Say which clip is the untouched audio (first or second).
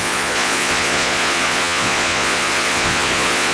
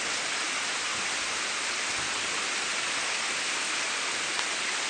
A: second